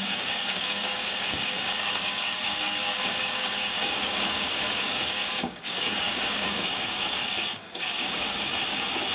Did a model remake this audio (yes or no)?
yes